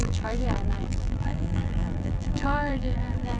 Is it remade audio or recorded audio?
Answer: remade